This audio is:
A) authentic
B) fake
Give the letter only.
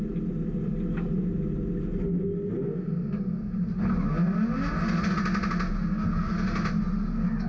A